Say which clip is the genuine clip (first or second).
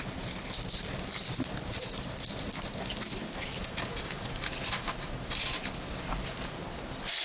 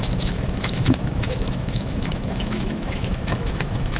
first